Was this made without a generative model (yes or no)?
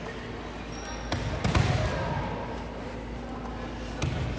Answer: yes